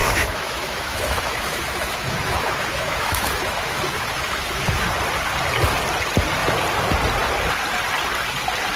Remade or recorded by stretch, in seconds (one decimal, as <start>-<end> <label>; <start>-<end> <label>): 0.0-4.9 remade; 4.9-8.8 recorded